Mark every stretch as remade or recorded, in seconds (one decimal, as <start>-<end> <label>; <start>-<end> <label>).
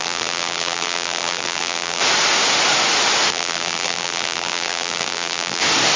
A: 0.0-2.0 remade; 2.0-3.3 recorded; 3.3-5.6 remade; 5.6-6.0 recorded